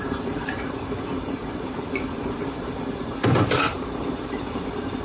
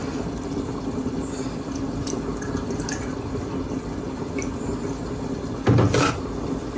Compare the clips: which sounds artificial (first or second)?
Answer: first